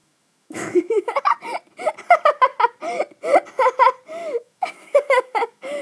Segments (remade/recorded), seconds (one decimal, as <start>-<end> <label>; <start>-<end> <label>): 0.0-1.2 remade; 1.2-4.2 recorded; 4.2-5.8 remade